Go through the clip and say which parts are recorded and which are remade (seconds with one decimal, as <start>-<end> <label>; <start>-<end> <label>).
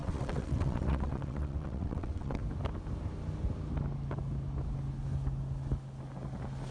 0.0-2.4 remade; 2.4-6.7 recorded